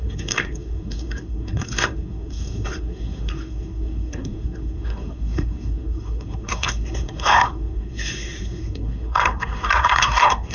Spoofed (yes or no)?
yes